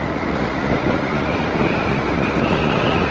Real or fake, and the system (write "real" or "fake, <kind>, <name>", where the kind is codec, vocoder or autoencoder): fake, vocoder, Vocos